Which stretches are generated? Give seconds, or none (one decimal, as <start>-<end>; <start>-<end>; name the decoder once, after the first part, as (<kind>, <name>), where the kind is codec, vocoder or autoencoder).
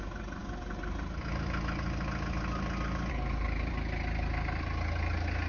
none